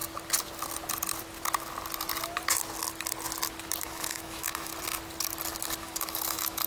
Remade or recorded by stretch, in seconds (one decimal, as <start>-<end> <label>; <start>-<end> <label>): 0.0-3.8 recorded; 3.8-4.7 remade; 4.7-5.8 recorded; 5.8-6.7 remade